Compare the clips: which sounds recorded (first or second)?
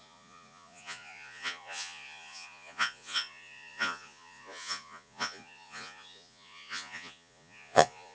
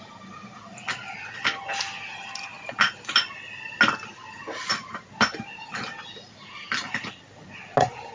second